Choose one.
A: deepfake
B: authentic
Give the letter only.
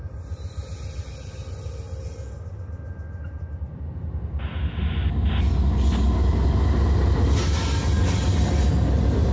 B